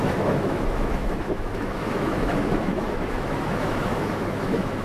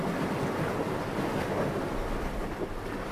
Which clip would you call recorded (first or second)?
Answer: second